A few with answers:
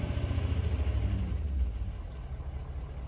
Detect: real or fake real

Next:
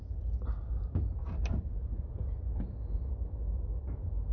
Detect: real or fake real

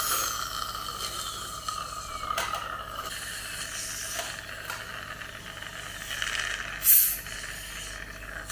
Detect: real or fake real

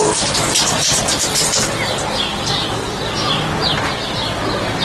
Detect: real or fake real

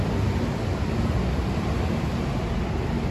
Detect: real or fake real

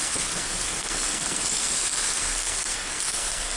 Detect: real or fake fake